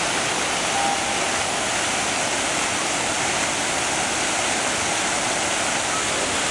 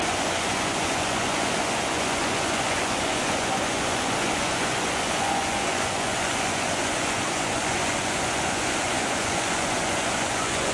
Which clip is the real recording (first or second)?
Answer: first